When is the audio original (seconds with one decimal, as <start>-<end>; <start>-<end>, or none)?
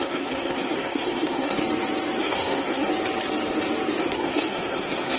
1.6-2.2; 2.9-4.0